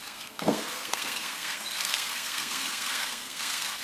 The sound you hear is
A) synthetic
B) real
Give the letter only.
A